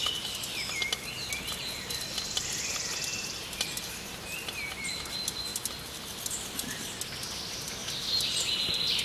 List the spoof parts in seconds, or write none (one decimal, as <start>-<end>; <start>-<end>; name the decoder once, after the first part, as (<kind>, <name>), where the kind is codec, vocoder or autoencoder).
none